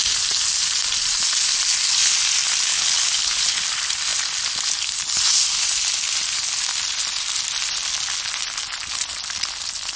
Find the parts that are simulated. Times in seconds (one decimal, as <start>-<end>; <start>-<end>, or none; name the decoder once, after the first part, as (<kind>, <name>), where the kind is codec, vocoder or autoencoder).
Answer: 2.7-3.6 (codec, HILCodec)